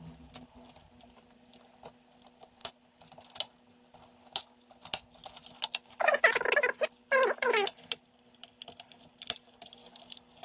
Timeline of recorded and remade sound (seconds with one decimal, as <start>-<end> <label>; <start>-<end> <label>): 0.0-10.4 recorded